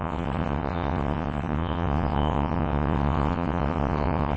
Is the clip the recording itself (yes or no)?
no